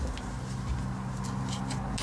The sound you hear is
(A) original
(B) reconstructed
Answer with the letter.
A